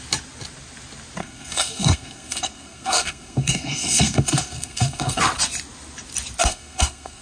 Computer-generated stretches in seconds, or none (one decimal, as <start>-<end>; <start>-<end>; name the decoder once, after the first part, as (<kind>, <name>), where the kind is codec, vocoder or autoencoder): 1.2-5.2 (codec, SNAC); 6.4-7.2